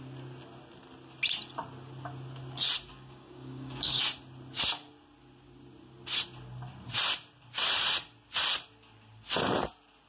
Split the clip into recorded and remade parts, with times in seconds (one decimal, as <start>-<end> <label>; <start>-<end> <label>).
0.0-2.9 recorded; 2.9-4.0 remade; 4.0-10.1 recorded